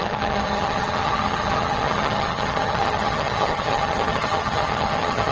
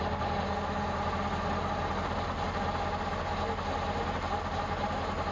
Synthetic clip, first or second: first